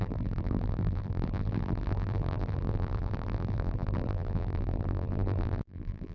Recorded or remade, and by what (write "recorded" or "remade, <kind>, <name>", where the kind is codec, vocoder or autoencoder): remade, vocoder, BigVGAN v2